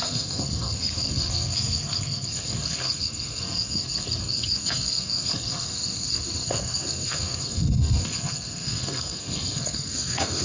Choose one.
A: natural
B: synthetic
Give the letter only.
B